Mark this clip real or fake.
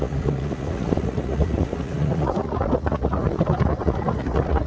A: fake